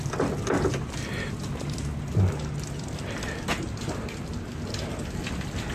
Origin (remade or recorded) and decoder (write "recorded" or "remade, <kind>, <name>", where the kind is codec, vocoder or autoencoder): recorded